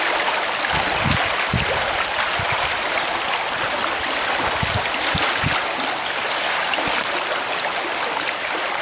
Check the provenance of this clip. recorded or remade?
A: recorded